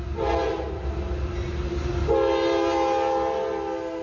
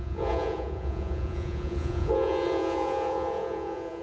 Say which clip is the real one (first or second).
first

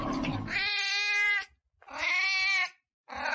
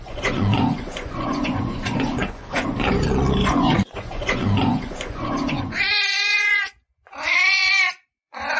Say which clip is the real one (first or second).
first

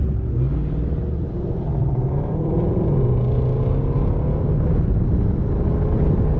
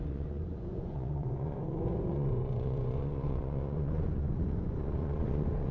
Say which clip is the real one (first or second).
first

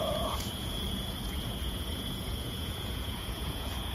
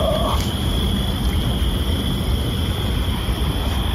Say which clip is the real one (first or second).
second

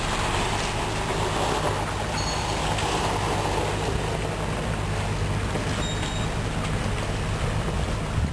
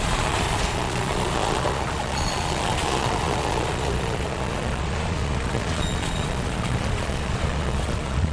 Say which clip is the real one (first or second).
first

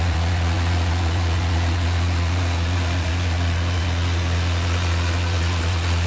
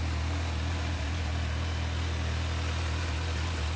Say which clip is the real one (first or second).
second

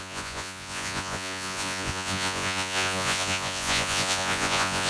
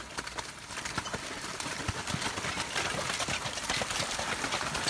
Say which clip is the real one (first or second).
second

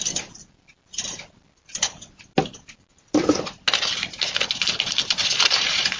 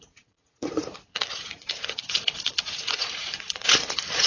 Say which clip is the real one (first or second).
first